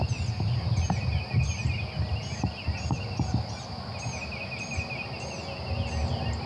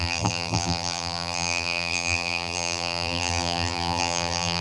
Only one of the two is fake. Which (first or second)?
second